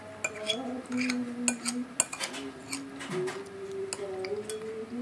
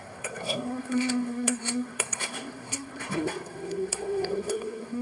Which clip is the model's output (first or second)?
second